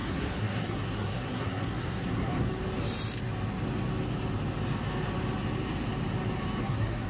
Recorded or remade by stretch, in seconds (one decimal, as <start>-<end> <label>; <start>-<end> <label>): 0.0-2.5 remade; 2.5-6.6 recorded; 6.6-7.1 remade